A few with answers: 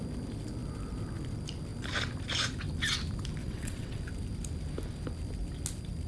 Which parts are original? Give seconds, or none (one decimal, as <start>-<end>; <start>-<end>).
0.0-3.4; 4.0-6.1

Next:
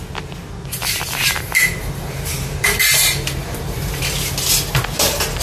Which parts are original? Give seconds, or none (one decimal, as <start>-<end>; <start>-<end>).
0.0-0.8; 4.0-5.4

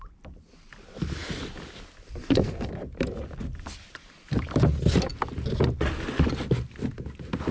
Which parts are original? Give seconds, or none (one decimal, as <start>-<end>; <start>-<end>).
0.0-2.2; 2.7-7.5

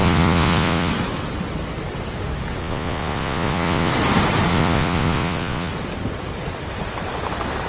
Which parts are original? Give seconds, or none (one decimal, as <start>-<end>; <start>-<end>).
0.9-2.6; 3.9-4.5; 5.7-7.7

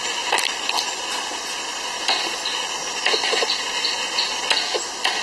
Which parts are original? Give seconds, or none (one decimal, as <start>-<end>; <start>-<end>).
0.0-5.2

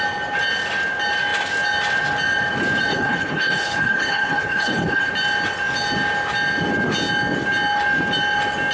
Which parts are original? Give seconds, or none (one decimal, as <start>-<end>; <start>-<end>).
0.0-2.9; 5.1-8.7

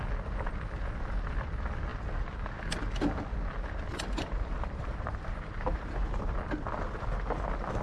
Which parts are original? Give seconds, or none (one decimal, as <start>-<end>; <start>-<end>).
0.0-3.9; 5.9-7.8